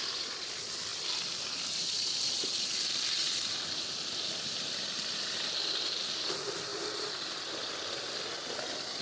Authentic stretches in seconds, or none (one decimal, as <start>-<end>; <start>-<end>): none